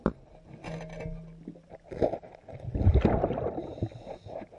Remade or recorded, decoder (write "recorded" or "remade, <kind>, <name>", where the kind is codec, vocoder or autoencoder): recorded